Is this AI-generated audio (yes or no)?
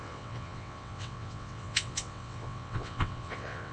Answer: yes